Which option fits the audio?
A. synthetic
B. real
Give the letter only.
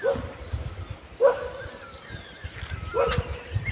B